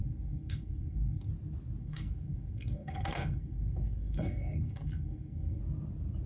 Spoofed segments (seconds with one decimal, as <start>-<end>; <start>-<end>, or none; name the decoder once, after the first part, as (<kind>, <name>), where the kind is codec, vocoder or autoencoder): 0.0-1.3 (codec, SNAC); 1.8-5.6